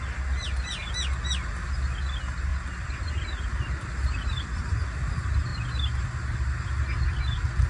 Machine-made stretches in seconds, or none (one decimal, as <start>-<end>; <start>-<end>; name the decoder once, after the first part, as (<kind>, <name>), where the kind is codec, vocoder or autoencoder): none